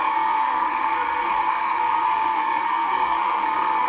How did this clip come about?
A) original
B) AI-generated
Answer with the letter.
B